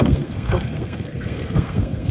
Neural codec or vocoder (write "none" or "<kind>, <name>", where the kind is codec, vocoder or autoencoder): codec, SNAC